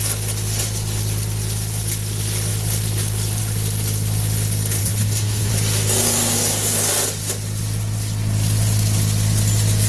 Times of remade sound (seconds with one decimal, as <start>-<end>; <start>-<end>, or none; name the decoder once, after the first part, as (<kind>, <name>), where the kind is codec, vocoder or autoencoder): 4.8-5.5 (codec, SNAC)